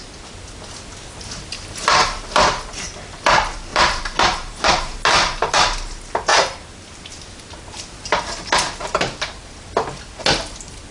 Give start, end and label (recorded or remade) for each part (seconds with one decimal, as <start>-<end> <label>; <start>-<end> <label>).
0.0-3.7 recorded; 3.7-5.6 remade; 5.6-6.3 recorded; 6.3-7.4 remade; 7.4-10.9 recorded